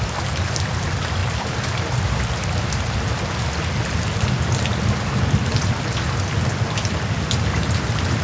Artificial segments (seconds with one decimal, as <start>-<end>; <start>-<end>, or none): none